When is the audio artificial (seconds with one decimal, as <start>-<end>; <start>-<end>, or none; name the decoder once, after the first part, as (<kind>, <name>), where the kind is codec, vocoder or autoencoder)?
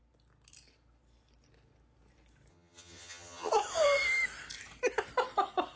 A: 2.5-3.5 (vocoder, HiFi-GAN)